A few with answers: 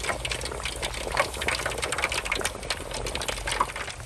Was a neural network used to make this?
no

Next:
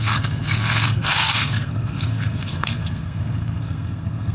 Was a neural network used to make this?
yes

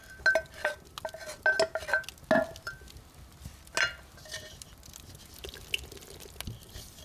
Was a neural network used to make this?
no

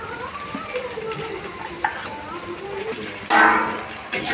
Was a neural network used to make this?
no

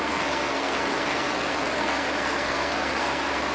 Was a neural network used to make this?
yes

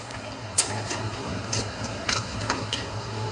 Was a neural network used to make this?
yes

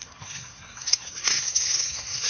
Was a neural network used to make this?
yes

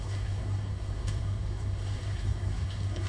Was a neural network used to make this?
yes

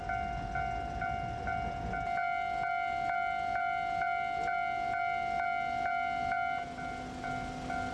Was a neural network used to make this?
no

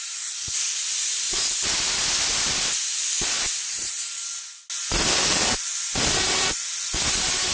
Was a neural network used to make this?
no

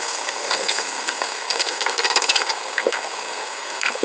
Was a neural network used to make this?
yes